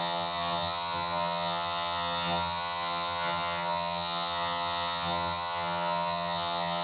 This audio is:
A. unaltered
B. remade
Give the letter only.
B